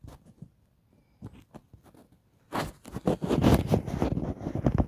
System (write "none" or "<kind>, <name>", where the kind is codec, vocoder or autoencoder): none